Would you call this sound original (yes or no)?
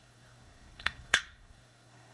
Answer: no